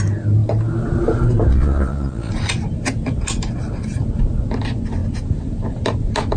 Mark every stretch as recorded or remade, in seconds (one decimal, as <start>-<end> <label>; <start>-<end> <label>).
0.0-1.5 recorded; 1.5-2.3 remade; 2.3-6.4 recorded